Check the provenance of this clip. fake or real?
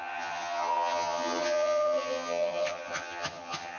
fake